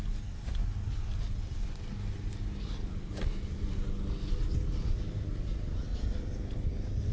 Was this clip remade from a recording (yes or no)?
no